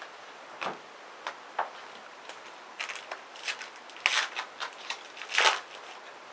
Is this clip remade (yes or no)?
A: no